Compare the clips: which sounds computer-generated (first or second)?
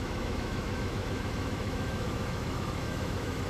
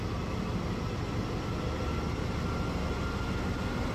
first